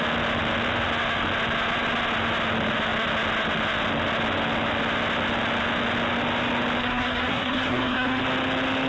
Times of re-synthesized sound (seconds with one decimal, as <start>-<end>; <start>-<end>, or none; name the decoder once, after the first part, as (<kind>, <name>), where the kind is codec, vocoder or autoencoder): 6.8-8.2 (codec, SNAC)